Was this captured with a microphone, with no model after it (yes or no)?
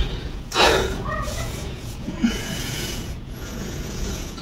no